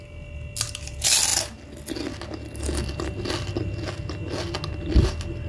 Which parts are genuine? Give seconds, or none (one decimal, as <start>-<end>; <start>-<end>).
0.0-5.5